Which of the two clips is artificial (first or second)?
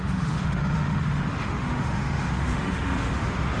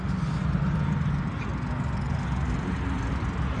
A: first